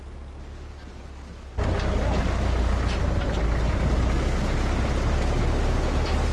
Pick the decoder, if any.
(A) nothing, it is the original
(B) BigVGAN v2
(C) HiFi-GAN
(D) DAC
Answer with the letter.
A